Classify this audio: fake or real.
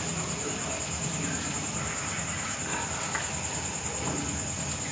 real